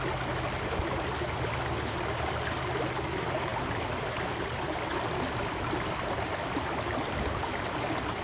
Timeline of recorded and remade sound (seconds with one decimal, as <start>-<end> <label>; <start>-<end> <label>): 0.0-8.2 recorded